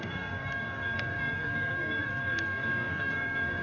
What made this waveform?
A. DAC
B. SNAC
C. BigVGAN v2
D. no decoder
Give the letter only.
B